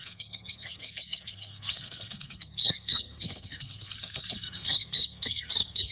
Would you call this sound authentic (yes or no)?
no